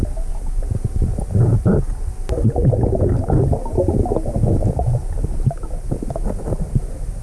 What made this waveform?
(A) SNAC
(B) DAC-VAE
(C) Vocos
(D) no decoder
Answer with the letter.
D